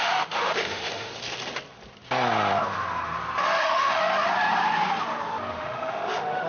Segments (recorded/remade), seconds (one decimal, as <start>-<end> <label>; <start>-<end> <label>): 0.0-1.1 remade; 1.1-3.6 recorded; 3.6-4.0 remade; 4.0-5.5 recorded; 5.5-6.5 remade